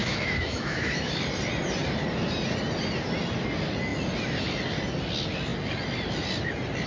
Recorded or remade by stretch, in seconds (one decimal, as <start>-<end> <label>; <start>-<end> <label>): 0.0-1.1 remade; 1.1-6.9 recorded